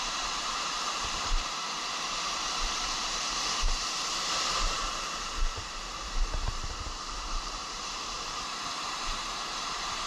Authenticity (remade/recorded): remade